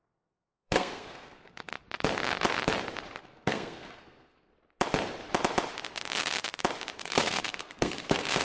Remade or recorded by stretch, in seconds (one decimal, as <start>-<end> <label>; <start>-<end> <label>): 0.0-1.7 remade; 1.7-3.2 recorded; 3.2-4.5 remade; 4.5-7.0 recorded; 7.0-8.4 remade